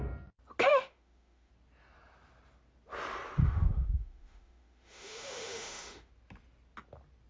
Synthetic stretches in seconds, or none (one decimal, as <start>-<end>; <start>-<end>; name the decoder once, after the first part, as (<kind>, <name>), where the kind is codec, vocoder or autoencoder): 0.7-1.5 (autoencoder, DAC-VAE); 3.4-6.1